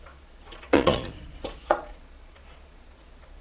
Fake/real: fake